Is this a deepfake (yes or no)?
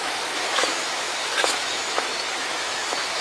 yes